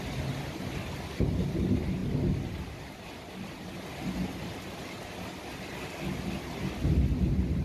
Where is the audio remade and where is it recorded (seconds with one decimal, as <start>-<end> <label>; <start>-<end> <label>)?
0.0-7.6 recorded